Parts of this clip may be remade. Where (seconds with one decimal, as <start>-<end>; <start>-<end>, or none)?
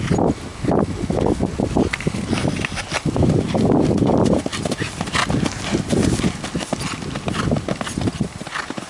none